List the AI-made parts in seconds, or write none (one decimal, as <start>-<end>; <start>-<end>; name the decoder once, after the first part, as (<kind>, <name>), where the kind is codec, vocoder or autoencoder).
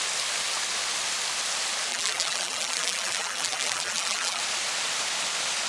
1.9-4.4 (vocoder, BigVGAN v2)